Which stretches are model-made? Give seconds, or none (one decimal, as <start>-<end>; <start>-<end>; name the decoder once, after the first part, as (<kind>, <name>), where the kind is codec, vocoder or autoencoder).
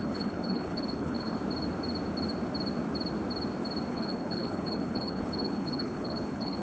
0.0-1.4 (codec, HILCodec); 3.9-6.6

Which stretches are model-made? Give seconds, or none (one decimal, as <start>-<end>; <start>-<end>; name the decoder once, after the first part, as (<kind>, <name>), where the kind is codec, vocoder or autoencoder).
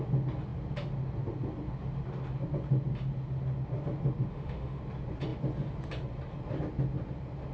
4.3-4.8 (autoencoder, DAC-VAE)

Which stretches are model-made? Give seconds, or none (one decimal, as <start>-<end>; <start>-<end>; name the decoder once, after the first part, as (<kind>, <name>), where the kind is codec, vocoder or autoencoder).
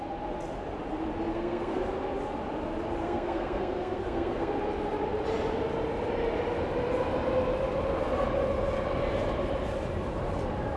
1.3-1.8 (codec, SNAC); 3.0-4.5